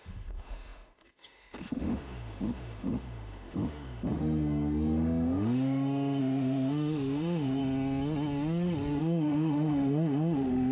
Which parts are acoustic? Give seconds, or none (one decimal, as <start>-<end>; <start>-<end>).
7.6-9.0